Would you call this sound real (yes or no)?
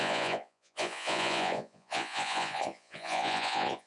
no